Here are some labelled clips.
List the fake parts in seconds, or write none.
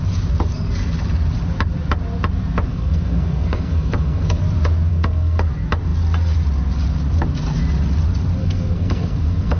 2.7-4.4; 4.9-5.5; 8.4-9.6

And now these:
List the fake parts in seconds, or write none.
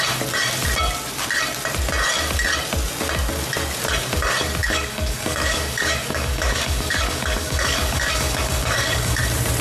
4.6-9.2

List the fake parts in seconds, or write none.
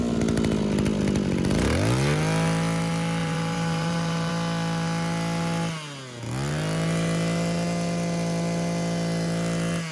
3.2-4.3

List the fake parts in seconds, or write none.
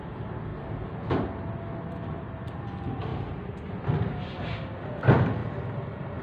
3.1-4.4